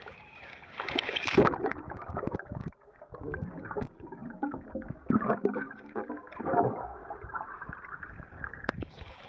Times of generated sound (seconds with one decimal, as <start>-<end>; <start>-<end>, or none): 0.0-7.0; 8.1-9.3